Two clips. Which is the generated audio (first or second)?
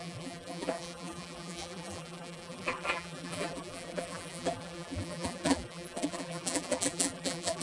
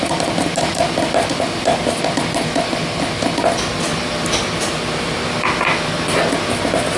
first